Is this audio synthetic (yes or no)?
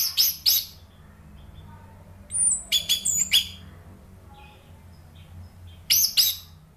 no